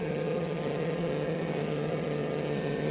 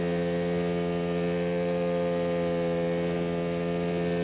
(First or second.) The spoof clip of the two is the first